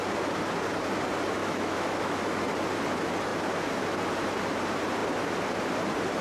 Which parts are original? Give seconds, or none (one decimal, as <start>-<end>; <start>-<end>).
0.0-1.4; 2.2-6.2